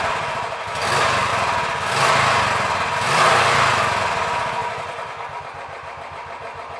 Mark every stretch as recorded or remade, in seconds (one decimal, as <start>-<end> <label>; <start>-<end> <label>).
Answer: 0.0-6.8 recorded